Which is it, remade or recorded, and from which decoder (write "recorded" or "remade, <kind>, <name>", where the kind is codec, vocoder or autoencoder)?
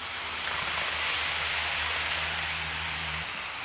recorded